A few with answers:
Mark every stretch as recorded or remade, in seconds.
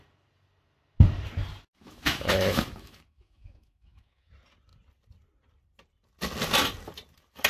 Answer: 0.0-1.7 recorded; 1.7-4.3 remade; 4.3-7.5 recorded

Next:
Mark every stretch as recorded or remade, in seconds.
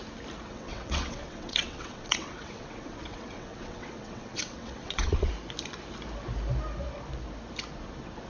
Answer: 0.0-0.5 recorded; 0.5-5.3 remade; 5.3-8.3 recorded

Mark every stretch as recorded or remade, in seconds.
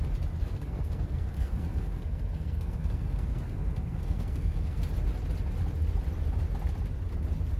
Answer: 0.0-0.4 recorded; 0.4-4.9 remade; 4.9-7.6 recorded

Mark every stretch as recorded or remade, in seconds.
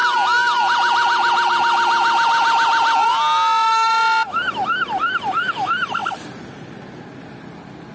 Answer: 0.0-7.9 recorded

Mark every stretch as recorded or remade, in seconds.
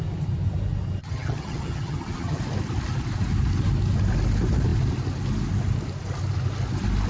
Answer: 0.0-1.0 recorded; 1.0-2.4 remade; 2.4-7.1 recorded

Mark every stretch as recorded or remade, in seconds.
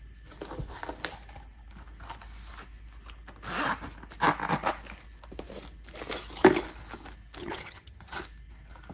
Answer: 0.0-7.4 recorded; 7.4-8.2 remade; 8.2-8.9 recorded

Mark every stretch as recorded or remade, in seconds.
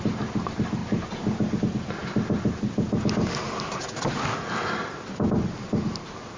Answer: 0.0-6.4 recorded